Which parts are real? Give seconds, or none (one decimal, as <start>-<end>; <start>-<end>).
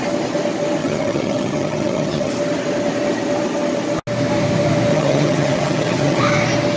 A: 0.0-0.8; 2.3-4.9; 6.2-6.8